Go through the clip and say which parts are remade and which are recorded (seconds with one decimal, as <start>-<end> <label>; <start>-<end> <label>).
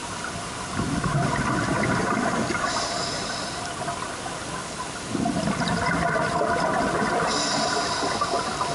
0.0-8.7 recorded